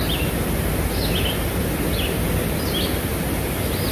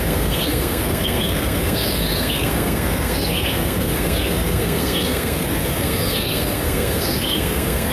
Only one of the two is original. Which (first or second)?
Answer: first